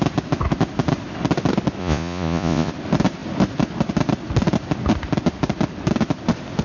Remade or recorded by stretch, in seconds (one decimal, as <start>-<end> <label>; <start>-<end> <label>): 0.0-1.8 recorded; 1.8-2.7 remade; 2.7-6.6 recorded